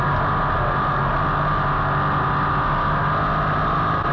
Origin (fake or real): real